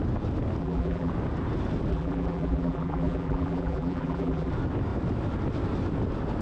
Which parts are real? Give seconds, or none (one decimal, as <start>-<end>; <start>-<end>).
0.0-0.6; 1.1-1.9; 4.5-6.4